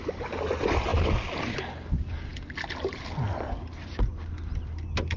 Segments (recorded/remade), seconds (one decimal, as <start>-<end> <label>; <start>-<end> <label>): 0.0-5.2 recorded